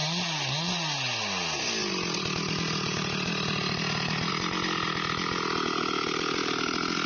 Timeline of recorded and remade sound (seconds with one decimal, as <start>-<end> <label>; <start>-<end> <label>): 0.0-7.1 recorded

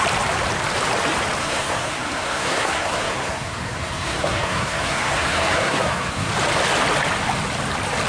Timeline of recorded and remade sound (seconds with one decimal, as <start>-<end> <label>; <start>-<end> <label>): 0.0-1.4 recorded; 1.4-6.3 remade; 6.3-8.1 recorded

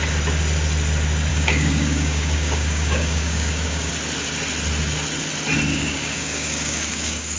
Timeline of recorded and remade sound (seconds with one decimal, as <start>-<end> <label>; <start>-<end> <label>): 0.0-1.3 recorded; 1.3-3.9 remade; 3.9-5.7 recorded; 5.7-7.4 remade

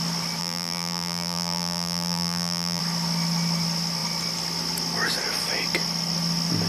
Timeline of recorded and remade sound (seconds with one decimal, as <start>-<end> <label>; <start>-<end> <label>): 0.0-0.4 recorded; 0.4-2.8 remade; 2.8-6.7 recorded